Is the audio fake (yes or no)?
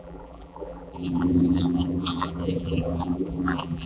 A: yes